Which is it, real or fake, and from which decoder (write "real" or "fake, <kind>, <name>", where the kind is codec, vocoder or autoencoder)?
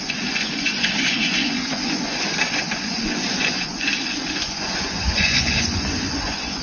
fake, vocoder, Vocos